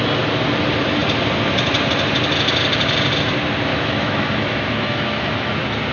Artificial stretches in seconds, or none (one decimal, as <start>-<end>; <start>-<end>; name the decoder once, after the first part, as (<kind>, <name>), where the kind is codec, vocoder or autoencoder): 3.7-5.5 (autoencoder, DAC-VAE)